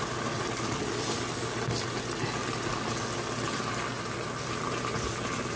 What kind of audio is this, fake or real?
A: real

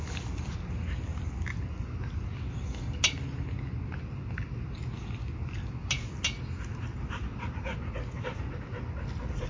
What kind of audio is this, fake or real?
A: real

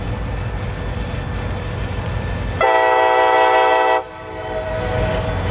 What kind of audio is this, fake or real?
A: real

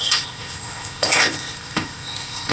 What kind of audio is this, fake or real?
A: fake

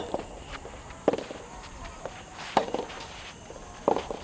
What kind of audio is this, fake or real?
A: real